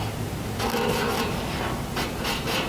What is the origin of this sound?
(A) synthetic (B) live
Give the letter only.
B